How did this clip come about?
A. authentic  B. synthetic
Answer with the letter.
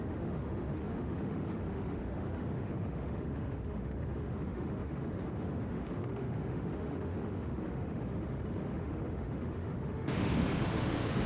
B